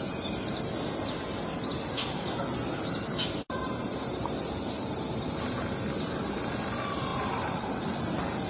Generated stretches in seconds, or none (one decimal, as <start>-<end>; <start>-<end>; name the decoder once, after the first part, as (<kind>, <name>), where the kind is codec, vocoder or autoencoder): 7.1-8.1 (vocoder, BigVGAN v2)